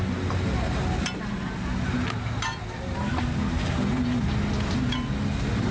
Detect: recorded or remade recorded